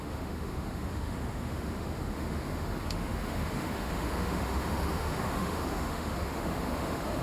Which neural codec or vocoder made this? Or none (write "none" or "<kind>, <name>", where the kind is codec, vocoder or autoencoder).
autoencoder, DAC-VAE